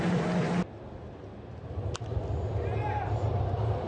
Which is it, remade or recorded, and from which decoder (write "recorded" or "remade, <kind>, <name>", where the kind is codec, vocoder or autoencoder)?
recorded